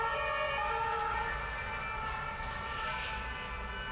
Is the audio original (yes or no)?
yes